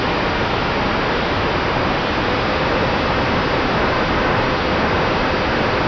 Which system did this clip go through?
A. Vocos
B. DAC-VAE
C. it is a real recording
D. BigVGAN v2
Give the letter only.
C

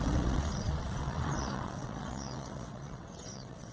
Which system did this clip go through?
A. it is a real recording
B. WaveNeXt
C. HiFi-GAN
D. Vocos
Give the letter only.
B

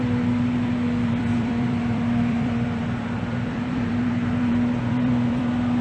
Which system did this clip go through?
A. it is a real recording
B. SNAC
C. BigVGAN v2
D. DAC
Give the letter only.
C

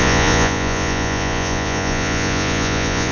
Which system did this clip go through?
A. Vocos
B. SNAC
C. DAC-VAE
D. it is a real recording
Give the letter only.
A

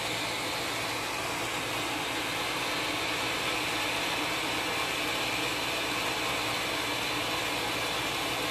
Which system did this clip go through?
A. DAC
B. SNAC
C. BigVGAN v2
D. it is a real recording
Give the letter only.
D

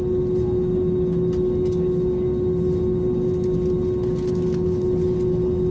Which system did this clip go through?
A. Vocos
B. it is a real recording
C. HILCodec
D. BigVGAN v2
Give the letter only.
B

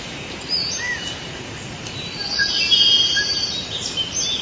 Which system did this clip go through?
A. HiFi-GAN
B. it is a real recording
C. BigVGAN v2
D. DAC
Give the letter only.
C